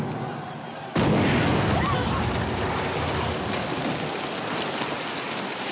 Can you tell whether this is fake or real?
real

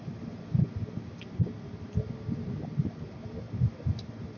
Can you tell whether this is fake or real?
real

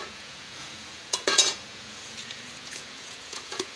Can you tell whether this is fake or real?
fake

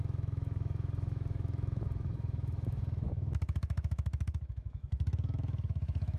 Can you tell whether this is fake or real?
fake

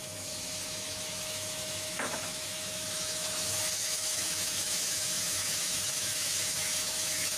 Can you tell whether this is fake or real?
fake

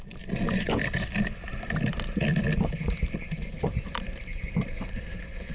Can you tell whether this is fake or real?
real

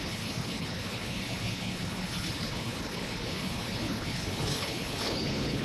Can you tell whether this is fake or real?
fake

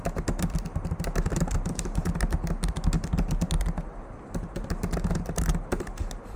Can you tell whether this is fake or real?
real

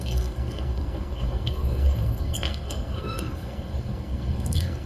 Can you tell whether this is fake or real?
fake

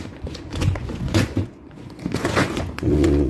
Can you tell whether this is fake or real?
fake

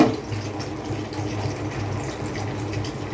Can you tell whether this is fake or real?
real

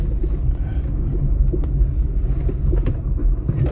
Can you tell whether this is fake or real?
real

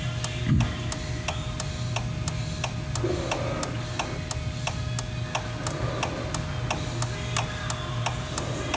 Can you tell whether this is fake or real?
real